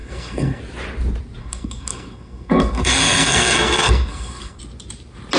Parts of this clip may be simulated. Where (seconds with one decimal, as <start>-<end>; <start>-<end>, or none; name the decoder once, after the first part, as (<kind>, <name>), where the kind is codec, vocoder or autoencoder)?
0.0-0.6 (codec, SNAC); 1.4-4.6